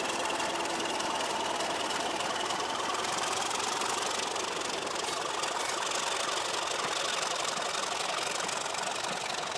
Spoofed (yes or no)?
no